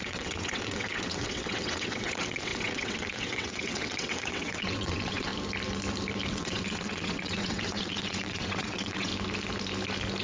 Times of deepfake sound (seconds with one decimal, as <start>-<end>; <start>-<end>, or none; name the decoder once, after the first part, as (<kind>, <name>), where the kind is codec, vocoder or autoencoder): 0.0-5.3 (vocoder, WaveNeXt); 6.3-9.1